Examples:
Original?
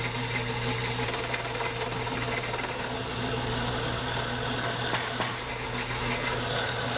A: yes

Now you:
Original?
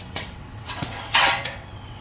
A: no